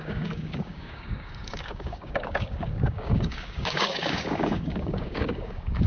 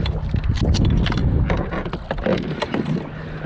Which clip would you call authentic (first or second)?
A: second